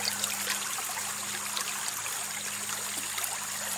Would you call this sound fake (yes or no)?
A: no